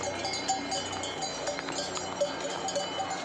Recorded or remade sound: recorded